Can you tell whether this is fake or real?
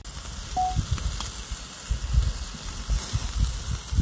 real